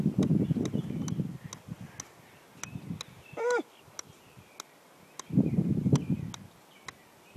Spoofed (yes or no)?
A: no